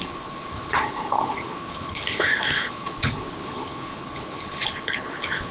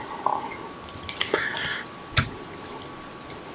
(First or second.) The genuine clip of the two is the second